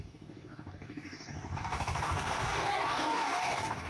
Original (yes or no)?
no